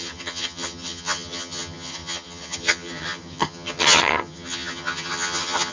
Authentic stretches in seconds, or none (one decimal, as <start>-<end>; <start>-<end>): none